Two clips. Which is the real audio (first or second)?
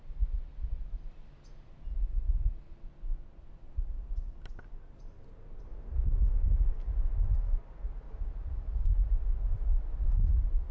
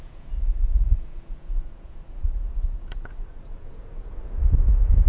first